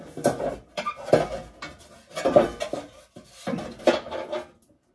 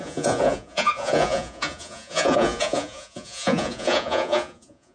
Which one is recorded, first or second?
first